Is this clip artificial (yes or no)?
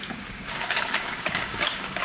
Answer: yes